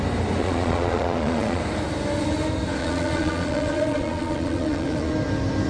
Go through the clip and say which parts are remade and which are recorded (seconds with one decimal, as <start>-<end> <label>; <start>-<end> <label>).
0.0-0.4 recorded; 0.4-1.6 remade; 1.6-2.8 recorded; 2.8-5.1 remade; 5.1-5.7 recorded